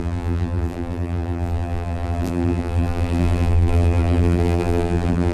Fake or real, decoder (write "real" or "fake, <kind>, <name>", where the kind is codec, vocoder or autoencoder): fake, vocoder, BigVGAN v2